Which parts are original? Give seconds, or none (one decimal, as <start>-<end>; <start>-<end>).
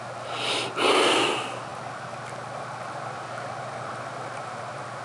0.0-5.0